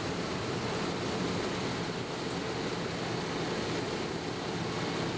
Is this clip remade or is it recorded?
recorded